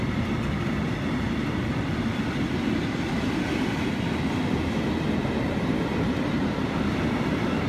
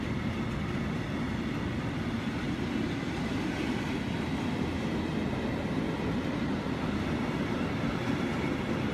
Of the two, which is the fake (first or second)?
first